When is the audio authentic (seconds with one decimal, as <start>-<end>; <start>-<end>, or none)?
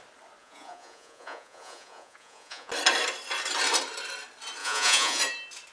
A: 0.0-0.4; 2.7-4.6; 5.2-5.7